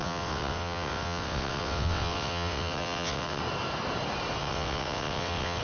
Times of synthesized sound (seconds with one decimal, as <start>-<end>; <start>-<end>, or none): 0.0-3.4; 4.4-5.6